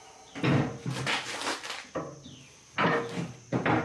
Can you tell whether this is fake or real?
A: real